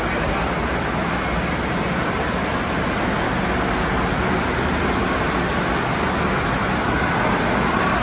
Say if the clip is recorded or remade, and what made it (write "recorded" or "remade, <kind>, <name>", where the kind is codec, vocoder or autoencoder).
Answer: recorded